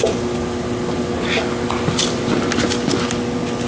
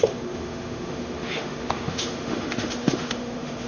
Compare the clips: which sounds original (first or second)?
first